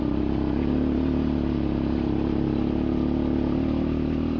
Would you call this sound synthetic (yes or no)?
no